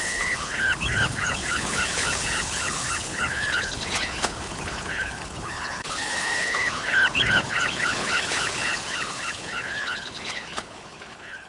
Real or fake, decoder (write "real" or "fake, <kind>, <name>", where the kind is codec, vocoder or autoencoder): fake, codec, HILCodec